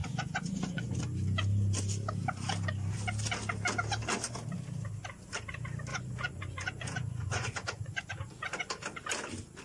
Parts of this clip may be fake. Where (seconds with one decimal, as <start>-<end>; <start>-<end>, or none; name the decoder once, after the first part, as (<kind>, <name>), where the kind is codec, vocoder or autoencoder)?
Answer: 0.0-1.0 (vocoder, Vocos); 5.9-8.7